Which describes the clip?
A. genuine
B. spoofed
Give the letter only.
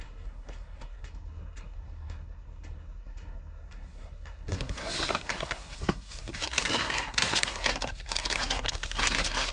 B